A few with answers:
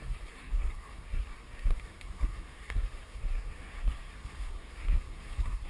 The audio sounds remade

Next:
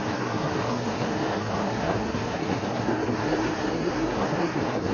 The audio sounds remade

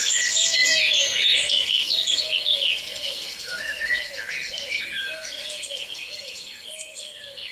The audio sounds remade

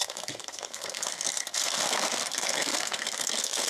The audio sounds remade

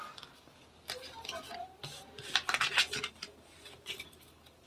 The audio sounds recorded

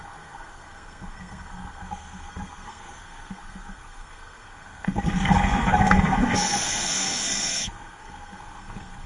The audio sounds remade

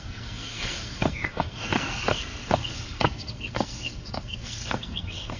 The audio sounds remade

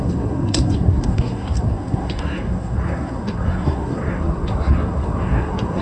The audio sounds remade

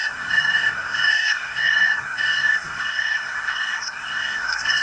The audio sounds remade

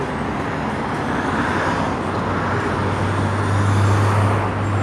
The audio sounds recorded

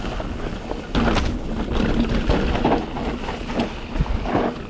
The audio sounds recorded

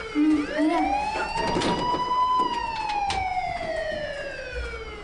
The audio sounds recorded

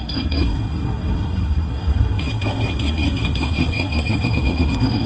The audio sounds remade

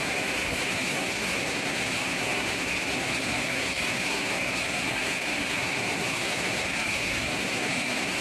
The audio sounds remade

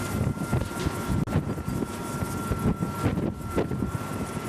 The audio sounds recorded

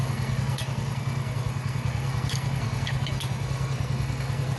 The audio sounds remade